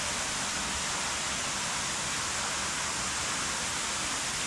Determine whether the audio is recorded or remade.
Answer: recorded